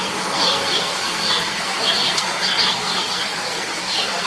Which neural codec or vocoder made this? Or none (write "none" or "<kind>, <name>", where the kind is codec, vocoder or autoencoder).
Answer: codec, SNAC